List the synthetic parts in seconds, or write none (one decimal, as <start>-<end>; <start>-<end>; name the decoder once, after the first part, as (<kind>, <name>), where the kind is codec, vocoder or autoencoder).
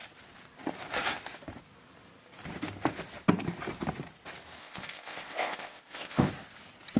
4.6-6.3 (codec, ZipCodec)